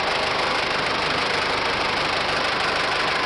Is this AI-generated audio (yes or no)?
no